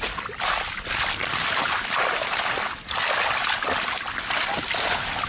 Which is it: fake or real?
real